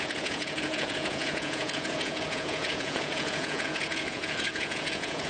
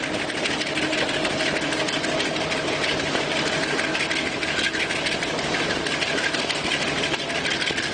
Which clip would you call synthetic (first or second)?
first